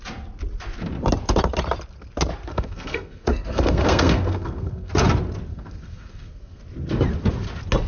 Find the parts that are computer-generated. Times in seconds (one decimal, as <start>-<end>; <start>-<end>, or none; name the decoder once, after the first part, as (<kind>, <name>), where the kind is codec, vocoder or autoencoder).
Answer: 2.5-4.9 (codec, SNAC); 5.5-6.6

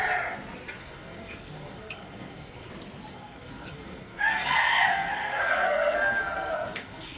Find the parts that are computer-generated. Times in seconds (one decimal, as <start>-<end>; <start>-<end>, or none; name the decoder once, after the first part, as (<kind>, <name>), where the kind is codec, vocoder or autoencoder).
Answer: 0.8-2.7 (codec, SNAC); 3.1-7.2